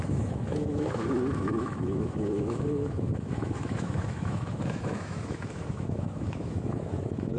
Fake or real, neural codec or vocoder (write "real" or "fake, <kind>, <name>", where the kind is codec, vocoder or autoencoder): fake, autoencoder, DAC-VAE